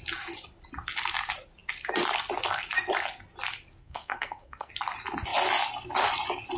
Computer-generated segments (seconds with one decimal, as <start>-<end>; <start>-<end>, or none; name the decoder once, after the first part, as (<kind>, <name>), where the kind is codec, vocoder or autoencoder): 3.8-4.7 (codec, SNAC)